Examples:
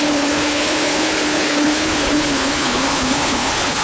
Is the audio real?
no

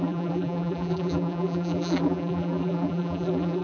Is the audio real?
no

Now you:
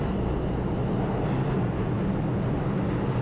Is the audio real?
yes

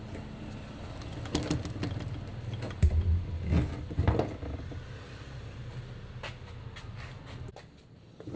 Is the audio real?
yes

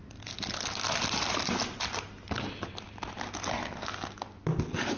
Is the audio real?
yes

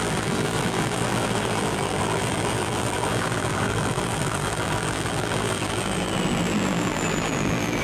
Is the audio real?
no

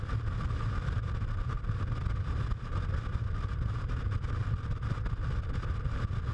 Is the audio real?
yes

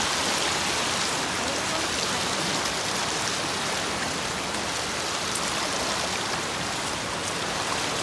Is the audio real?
yes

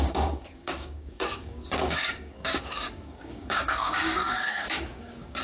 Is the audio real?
no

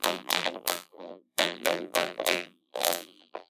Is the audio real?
no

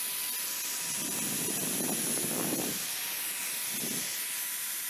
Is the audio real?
yes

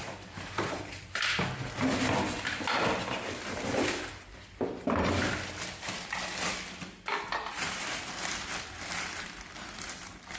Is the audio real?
no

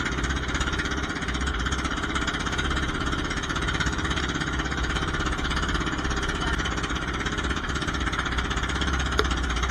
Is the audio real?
no